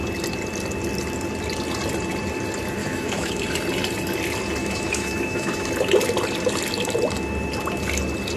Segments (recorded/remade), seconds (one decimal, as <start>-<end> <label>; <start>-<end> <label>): 0.0-2.8 recorded; 2.8-3.4 remade; 3.4-4.6 recorded; 4.6-5.7 remade; 5.7-8.4 recorded